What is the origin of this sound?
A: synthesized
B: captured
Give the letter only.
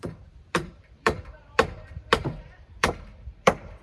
A